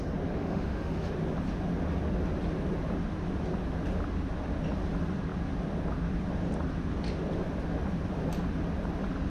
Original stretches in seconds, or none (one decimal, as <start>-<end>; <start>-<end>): 0.0-0.4; 1.1-9.3